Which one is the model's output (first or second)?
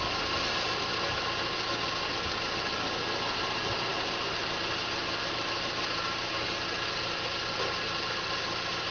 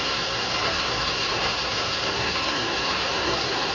second